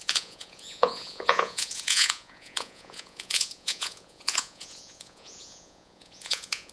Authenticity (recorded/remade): remade